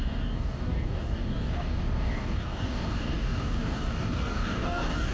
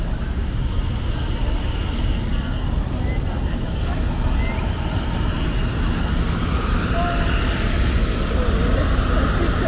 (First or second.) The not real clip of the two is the first